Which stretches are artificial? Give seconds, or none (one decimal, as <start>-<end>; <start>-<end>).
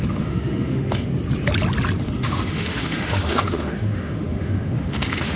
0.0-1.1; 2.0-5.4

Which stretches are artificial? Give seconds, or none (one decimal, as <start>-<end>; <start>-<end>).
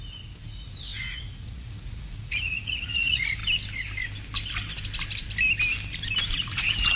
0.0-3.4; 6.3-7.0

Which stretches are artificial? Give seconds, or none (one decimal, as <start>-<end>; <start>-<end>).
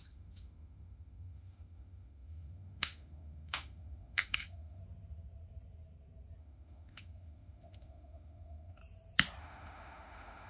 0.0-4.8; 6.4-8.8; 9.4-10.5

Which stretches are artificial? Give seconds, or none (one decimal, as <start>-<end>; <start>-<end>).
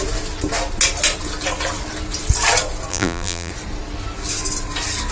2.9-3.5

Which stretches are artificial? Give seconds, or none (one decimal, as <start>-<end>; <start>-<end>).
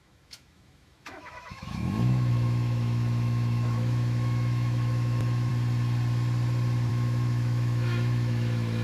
0.0-5.5; 6.9-8.8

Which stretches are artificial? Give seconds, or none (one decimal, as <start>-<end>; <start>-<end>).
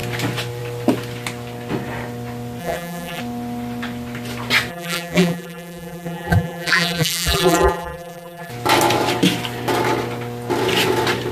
2.6-3.2; 4.7-8.5